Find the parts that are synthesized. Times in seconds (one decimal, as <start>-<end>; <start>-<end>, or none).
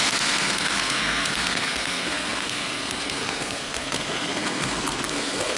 0.0-5.6